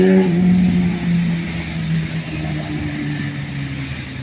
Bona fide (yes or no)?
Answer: yes